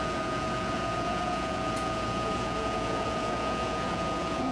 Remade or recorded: remade